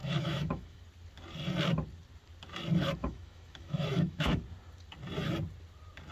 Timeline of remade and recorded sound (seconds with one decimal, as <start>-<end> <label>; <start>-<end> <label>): 0.0-0.8 remade; 0.8-3.0 recorded; 3.0-4.4 remade; 4.4-6.1 recorded